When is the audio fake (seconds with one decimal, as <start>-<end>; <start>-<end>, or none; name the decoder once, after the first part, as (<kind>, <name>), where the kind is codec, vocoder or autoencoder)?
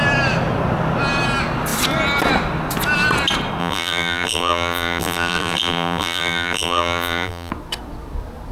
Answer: 3.6-7.5 (vocoder, BigVGAN v2)